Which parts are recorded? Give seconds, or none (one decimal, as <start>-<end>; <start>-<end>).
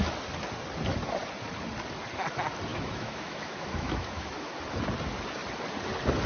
0.0-2.7; 4.6-6.3